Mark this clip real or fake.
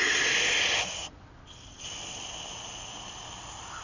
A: real